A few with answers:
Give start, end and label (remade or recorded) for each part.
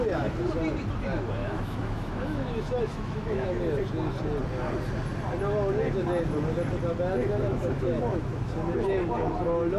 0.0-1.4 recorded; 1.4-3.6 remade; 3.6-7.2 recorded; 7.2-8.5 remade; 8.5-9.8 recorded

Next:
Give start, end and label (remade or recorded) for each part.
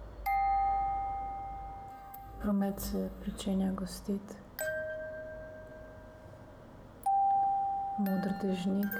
0.0-1.9 recorded; 1.9-3.4 remade; 3.4-9.0 recorded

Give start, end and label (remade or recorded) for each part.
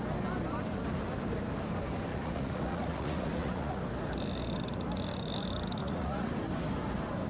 0.0-2.1 recorded; 2.1-3.8 remade; 3.8-5.8 recorded; 5.8-6.3 remade; 6.3-7.3 recorded